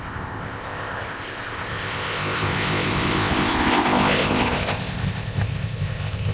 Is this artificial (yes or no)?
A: yes